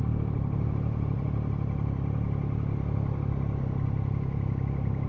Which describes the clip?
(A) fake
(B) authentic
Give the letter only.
B